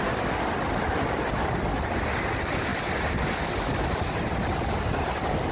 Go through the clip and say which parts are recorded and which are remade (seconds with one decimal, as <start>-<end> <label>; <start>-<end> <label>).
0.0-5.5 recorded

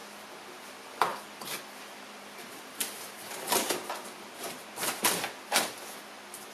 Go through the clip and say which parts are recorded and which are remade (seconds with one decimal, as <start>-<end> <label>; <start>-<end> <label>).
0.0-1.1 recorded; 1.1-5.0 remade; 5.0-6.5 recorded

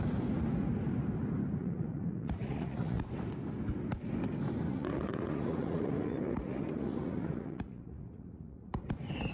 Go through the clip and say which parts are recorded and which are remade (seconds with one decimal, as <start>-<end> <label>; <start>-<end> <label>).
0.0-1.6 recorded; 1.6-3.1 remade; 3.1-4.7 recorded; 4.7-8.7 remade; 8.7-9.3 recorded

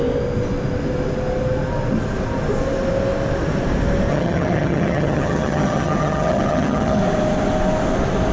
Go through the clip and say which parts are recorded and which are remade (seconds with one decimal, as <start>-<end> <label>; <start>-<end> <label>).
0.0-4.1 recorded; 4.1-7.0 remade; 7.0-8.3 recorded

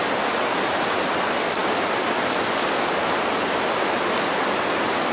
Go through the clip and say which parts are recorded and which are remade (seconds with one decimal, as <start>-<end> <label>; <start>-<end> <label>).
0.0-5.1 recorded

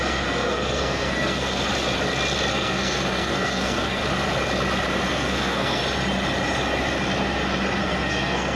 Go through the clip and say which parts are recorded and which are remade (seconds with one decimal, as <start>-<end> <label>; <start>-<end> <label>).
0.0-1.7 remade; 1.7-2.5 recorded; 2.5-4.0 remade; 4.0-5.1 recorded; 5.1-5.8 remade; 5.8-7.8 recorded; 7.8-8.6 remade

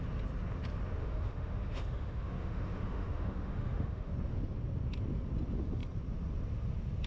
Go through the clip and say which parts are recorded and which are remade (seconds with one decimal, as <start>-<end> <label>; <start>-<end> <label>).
0.0-1.0 recorded; 1.0-4.1 remade; 4.1-7.1 recorded

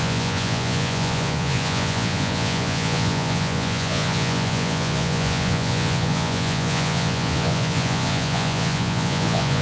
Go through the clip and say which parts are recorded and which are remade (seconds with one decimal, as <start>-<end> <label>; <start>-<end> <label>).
0.0-9.6 remade